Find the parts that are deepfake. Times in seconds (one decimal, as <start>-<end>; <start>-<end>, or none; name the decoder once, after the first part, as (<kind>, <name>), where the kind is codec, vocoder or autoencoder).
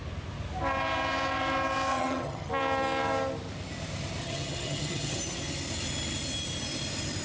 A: 1.9-2.5 (vocoder, HiFi-GAN); 4.2-5.2